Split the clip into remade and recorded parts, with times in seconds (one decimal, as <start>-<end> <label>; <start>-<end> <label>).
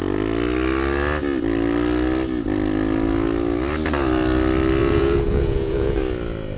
0.0-4.8 recorded; 4.8-6.0 remade; 6.0-6.6 recorded